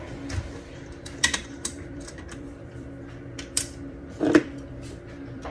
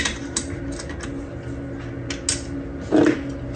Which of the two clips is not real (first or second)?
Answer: first